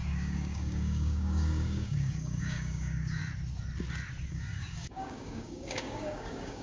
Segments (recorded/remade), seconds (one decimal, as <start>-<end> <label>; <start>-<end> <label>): 0.0-3.2 remade; 3.2-4.3 recorded; 4.3-6.6 remade

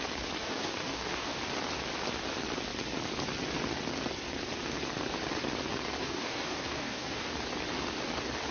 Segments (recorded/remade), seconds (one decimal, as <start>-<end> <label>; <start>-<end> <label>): 0.0-0.4 recorded; 0.4-1.4 remade; 1.4-6.0 recorded; 6.0-7.3 remade; 7.3-8.5 recorded

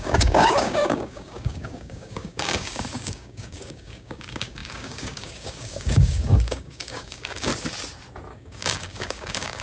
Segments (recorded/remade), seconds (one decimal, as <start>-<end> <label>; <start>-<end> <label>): 0.0-7.5 remade; 7.5-8.3 recorded; 8.3-9.6 remade

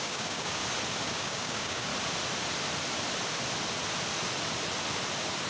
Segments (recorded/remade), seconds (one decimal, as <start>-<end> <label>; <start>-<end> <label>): 0.0-0.6 remade; 0.6-1.1 recorded; 1.1-1.9 remade; 1.9-5.5 recorded

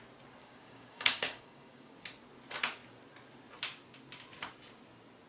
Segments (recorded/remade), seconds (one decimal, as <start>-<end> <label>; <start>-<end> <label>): 0.0-0.4 recorded; 0.4-1.9 remade; 1.9-5.3 recorded

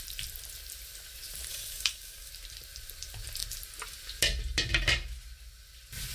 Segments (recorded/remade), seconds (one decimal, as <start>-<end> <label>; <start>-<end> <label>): 0.0-1.5 recorded; 1.5-2.3 remade; 2.3-6.1 recorded

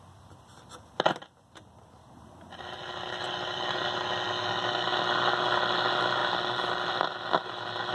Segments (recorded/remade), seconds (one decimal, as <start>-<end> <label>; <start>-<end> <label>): 0.0-7.9 recorded